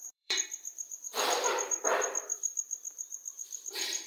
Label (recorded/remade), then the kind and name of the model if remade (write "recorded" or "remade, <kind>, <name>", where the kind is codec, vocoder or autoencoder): remade, vocoder, BigVGAN v2